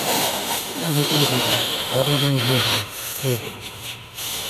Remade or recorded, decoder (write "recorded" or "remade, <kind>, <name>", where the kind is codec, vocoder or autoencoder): remade, autoencoder, DAC-VAE